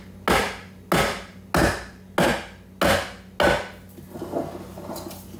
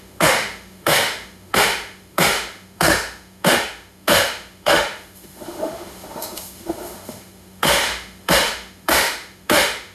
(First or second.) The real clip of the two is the first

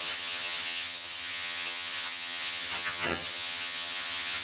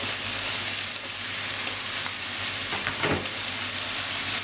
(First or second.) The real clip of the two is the second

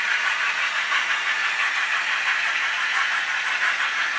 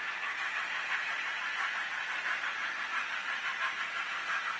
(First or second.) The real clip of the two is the first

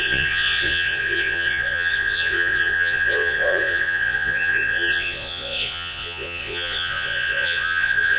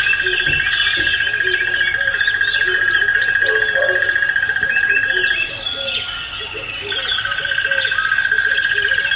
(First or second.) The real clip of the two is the second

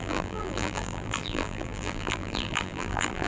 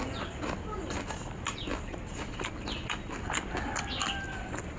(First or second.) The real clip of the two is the second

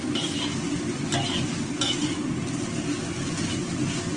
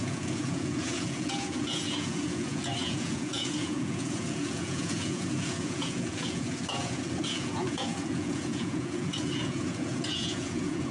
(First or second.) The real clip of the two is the first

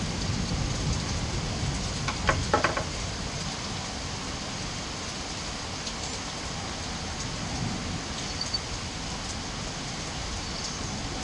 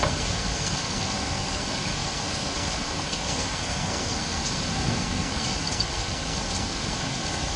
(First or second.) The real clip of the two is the first